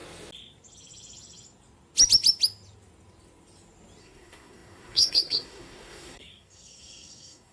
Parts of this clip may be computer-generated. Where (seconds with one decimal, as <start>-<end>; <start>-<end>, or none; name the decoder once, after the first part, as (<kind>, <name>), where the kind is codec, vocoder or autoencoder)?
4.0-7.5 (codec, SNAC)